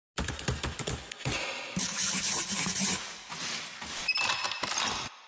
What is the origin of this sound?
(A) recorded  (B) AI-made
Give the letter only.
A